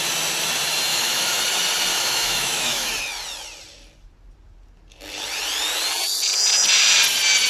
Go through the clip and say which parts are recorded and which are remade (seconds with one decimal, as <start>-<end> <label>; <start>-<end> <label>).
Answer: 0.0-0.9 recorded; 0.9-1.4 remade; 1.4-1.9 recorded; 1.9-2.9 remade; 2.9-7.5 recorded